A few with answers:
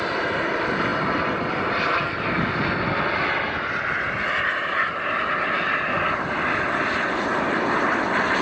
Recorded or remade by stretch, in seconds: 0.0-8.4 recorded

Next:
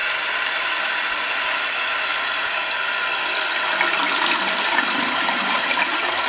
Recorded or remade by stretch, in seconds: 0.0-1.3 remade; 1.3-4.0 recorded; 4.0-4.6 remade; 4.6-6.3 recorded

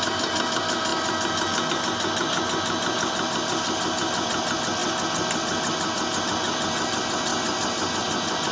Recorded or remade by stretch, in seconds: 0.0-8.5 recorded

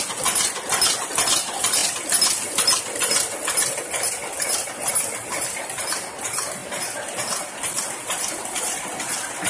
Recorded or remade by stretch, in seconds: 0.0-9.5 recorded

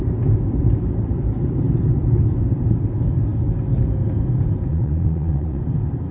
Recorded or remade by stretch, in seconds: 0.0-4.7 recorded; 4.7-5.6 remade; 5.6-6.1 recorded